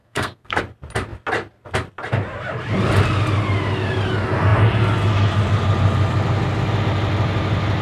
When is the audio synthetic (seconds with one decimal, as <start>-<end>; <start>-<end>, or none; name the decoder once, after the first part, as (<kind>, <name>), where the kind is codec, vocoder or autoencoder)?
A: 0.0-0.6 (codec, SNAC)